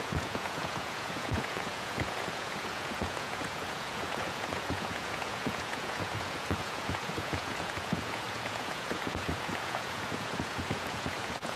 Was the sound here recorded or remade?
remade